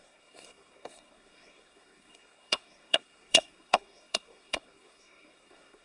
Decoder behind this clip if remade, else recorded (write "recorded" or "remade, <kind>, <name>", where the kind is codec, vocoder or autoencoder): remade, codec, SNAC